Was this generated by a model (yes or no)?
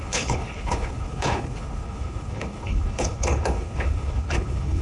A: yes